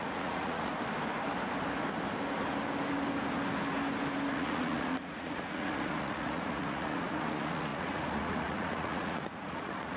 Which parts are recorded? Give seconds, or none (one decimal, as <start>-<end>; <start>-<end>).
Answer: 0.7-4.3